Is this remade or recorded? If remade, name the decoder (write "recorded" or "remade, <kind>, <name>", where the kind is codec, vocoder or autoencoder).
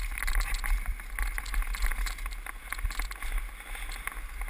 recorded